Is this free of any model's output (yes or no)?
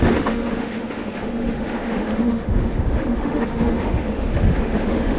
no